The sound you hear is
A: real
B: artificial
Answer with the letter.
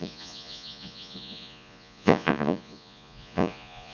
B